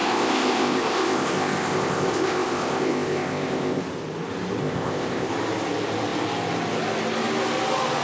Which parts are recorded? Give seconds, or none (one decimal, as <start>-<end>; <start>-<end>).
3.8-4.6; 5.3-8.0